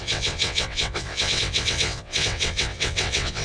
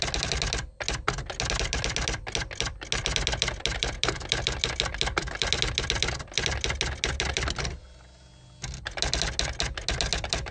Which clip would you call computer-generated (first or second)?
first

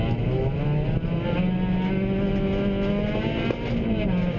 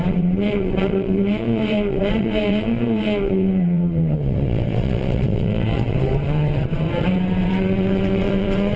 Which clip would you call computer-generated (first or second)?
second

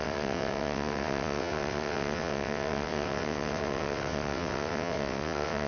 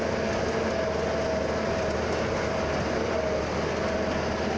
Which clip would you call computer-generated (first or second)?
first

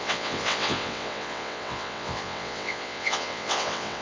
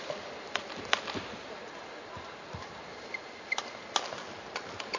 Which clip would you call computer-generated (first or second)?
first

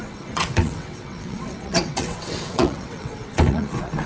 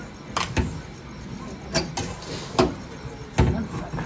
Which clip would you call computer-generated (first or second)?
first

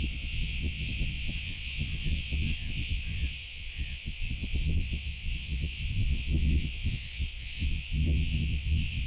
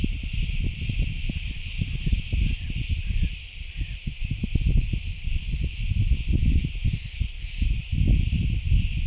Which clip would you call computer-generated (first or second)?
first